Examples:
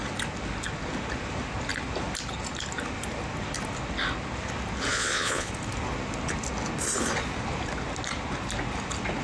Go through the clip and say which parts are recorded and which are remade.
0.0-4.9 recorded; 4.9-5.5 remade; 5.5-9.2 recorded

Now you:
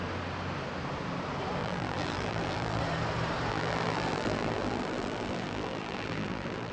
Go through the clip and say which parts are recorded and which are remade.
0.0-1.6 recorded; 1.6-2.8 remade; 2.8-3.5 recorded; 3.5-6.7 remade

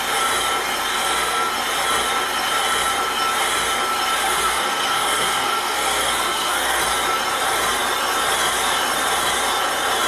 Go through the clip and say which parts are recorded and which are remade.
0.0-0.9 recorded; 0.9-1.5 remade; 1.5-4.2 recorded; 4.2-6.8 remade; 6.8-10.1 recorded

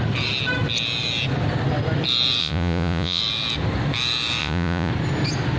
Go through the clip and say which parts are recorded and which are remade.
0.0-2.4 recorded; 2.4-3.2 remade; 3.2-4.4 recorded; 4.4-4.9 remade; 4.9-5.6 recorded

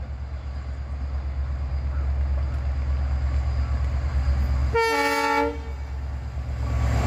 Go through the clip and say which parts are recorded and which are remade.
0.0-7.1 recorded

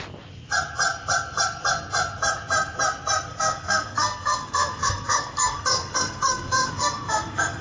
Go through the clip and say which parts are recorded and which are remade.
0.0-3.3 recorded; 3.3-7.6 remade

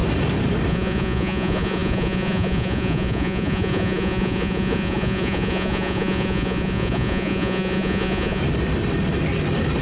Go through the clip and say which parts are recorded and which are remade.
0.0-0.7 recorded; 0.7-8.4 remade; 8.4-9.8 recorded

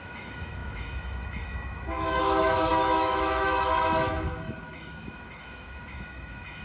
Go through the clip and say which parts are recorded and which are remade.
0.0-6.6 remade